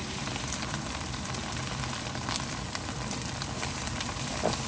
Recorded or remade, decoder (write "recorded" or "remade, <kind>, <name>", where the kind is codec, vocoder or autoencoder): remade, vocoder, BigVGAN v2